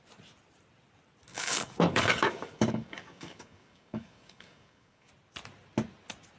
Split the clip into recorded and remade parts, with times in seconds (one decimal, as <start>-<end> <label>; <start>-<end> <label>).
0.0-1.3 recorded; 1.3-5.1 remade; 5.1-6.4 recorded